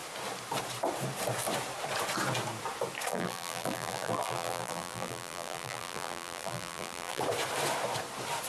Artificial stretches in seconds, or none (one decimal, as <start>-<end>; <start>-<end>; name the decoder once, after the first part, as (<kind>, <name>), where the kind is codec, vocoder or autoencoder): 3.1-7.2 (vocoder, BigVGAN v2)